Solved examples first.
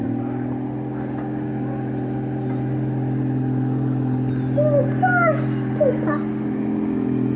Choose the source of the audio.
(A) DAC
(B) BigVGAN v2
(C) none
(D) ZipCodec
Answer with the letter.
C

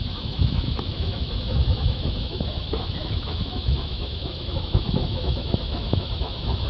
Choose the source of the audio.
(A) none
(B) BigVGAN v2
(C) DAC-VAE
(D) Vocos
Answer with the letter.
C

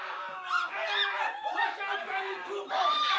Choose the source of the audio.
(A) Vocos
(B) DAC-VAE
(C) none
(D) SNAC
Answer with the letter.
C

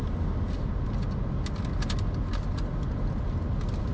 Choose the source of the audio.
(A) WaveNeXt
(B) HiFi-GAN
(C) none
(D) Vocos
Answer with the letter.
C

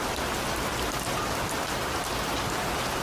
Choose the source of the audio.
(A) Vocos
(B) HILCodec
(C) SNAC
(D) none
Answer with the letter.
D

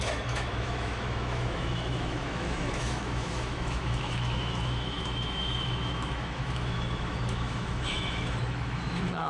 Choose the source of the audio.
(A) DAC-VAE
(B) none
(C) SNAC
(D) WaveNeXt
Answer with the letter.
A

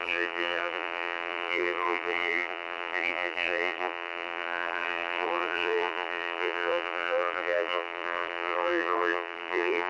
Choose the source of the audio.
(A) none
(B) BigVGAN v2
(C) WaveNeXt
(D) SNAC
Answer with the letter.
B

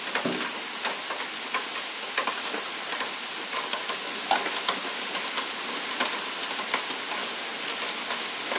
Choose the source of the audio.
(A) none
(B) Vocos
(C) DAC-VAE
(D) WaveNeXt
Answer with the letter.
A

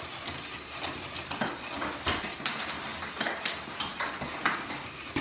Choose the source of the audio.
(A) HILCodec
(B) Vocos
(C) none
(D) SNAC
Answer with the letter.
C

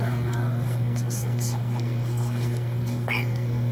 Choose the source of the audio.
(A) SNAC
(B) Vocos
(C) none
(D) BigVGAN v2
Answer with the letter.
A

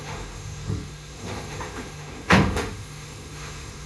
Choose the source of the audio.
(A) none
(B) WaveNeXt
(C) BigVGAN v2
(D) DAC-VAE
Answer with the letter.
D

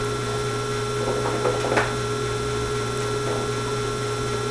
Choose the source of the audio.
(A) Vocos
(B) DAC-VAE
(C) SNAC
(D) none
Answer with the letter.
D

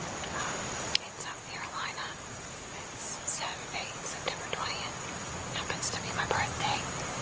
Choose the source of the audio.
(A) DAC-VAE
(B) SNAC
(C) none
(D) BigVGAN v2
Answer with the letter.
C